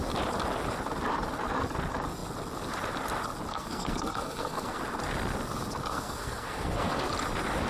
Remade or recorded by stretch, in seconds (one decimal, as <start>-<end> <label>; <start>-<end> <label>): 0.0-3.5 recorded; 3.5-4.8 remade; 4.8-5.9 recorded; 5.9-7.1 remade; 7.1-7.7 recorded